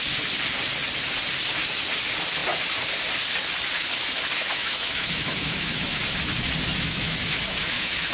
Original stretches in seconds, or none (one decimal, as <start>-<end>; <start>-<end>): 0.0-4.4; 6.0-6.7